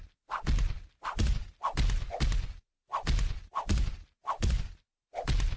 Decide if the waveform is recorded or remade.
recorded